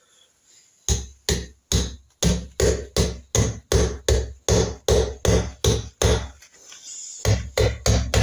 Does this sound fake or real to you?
real